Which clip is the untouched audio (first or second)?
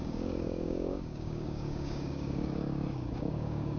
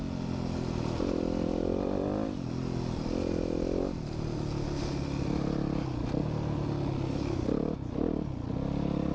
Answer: second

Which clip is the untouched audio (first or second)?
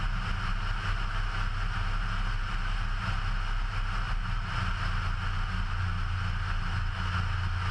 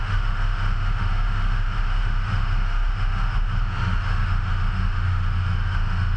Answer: first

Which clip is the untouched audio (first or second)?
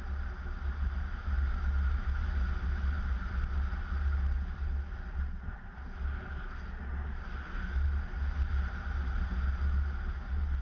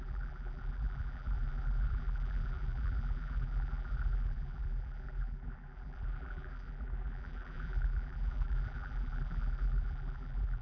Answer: first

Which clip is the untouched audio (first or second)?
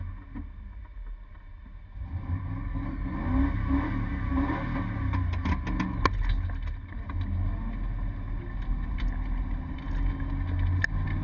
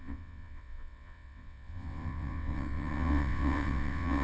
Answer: first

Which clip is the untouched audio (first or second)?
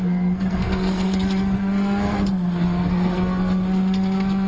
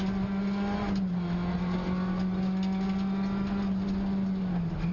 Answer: second